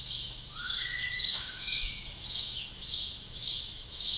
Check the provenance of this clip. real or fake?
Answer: fake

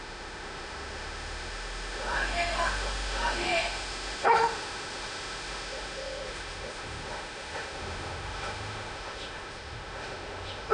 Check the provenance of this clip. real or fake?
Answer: fake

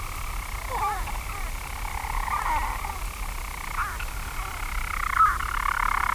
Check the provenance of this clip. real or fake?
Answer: real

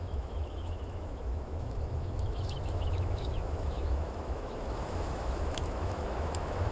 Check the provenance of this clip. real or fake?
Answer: fake